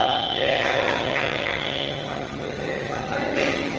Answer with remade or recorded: remade